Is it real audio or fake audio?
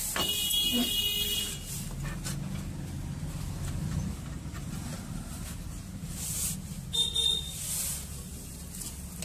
real